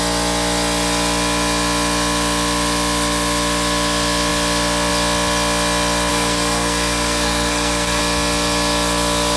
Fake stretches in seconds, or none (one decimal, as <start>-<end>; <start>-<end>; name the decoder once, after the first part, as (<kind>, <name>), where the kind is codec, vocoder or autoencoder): 6.1-8.0 (codec, SNAC)